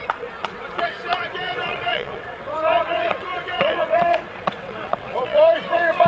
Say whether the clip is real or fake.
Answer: fake